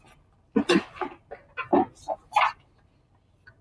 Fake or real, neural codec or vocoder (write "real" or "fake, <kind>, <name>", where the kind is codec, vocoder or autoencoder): real